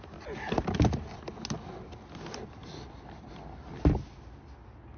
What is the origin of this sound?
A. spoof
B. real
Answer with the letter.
B